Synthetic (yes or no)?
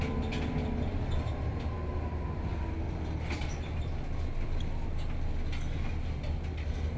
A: no